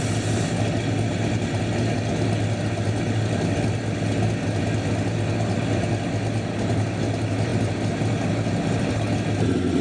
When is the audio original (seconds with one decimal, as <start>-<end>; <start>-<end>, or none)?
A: 0.0-9.8